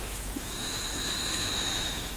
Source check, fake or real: fake